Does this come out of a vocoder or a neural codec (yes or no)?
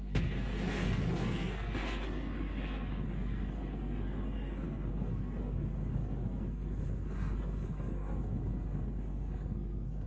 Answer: yes